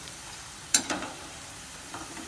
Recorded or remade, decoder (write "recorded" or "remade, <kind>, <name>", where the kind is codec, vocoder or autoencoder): remade, vocoder, BigVGAN v2